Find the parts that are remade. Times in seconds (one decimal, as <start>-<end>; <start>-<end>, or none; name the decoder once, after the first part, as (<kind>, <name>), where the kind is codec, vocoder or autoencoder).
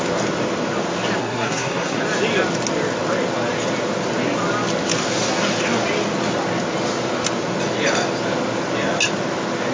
1.2-2.0 (codec, SNAC)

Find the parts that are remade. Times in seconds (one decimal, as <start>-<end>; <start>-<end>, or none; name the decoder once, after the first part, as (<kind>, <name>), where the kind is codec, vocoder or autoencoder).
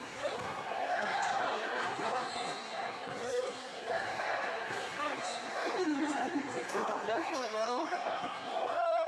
0.0-9.1 (codec, SNAC)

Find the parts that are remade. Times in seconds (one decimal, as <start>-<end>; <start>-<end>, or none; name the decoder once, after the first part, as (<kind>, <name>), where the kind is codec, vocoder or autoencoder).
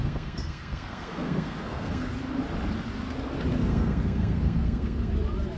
0.0-2.1 (codec, SNAC); 3.6-5.1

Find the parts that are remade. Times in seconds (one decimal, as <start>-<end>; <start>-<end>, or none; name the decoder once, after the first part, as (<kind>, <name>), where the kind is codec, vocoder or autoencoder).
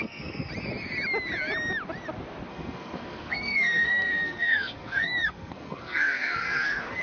0.0-0.5 (codec, SNAC); 2.5-7.0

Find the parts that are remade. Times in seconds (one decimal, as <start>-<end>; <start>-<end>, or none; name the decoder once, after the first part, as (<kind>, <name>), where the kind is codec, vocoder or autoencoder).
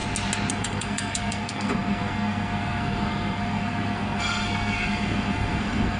0.5-6.0 (codec, SNAC)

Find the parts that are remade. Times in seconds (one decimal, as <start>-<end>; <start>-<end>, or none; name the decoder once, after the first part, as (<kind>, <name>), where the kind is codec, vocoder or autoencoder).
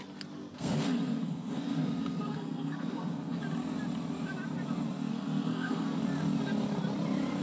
0.5-3.4 (codec, SNAC); 5.1-6.0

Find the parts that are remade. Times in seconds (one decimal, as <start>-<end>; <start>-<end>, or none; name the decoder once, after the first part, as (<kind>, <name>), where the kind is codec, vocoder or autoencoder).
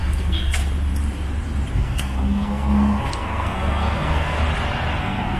0.0-0.6 (codec, SNAC); 1.7-4.4; 5.0-5.4